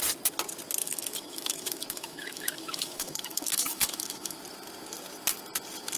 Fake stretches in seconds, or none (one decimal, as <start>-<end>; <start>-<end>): 0.8-4.4